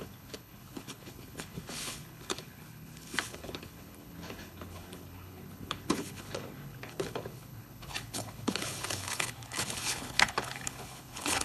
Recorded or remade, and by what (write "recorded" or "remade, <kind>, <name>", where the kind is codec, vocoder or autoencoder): remade, codec, HILCodec